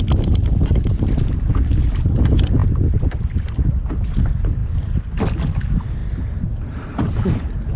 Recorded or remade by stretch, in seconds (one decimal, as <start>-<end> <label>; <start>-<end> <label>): 0.0-7.8 recorded